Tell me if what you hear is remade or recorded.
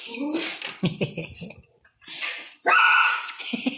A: recorded